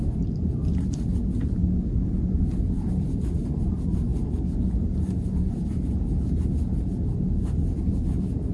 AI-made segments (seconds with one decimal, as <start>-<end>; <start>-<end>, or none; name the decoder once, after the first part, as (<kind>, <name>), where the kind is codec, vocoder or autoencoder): 0.0-1.6 (vocoder, BigVGAN v2); 2.4-8.5